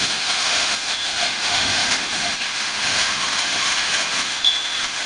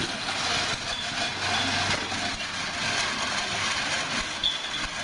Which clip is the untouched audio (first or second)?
second